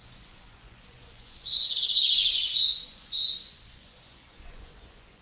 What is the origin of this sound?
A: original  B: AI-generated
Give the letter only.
B